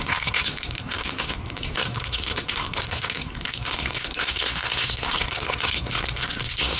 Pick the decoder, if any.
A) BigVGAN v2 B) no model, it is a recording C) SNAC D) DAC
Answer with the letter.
C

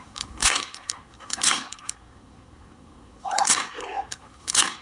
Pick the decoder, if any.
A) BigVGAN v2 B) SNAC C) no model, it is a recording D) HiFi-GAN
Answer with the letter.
B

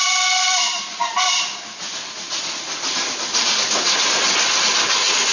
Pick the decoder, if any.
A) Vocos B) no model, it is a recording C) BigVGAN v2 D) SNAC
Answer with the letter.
B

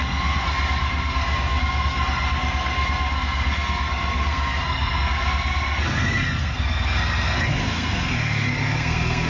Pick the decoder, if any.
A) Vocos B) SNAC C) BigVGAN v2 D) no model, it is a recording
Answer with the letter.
B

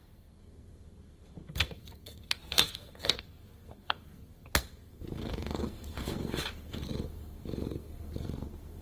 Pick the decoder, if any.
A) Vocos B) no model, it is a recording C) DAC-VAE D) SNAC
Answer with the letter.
D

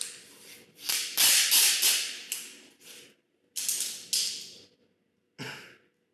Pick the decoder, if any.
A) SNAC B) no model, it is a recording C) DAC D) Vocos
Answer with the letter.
B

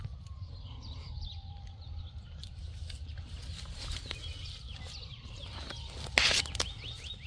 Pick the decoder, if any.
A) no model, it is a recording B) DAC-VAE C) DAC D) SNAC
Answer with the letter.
A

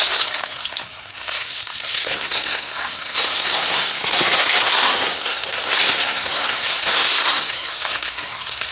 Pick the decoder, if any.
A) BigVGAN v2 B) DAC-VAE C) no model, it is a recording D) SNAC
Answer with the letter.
D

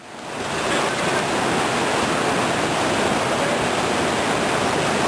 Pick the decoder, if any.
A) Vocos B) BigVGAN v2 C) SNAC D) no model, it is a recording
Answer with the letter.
D